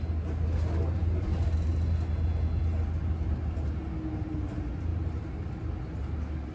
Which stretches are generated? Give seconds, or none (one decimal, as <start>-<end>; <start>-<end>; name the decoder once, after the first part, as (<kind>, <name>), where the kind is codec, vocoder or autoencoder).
none